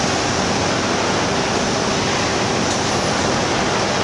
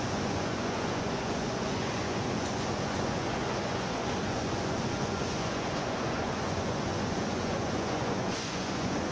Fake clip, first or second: second